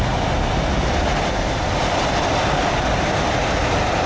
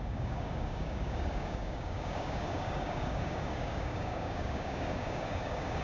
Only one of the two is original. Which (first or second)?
first